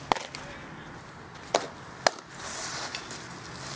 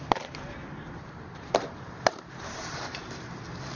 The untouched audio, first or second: first